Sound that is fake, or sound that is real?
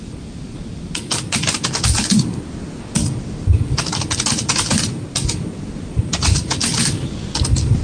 real